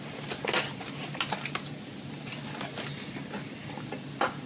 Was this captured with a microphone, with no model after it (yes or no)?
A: yes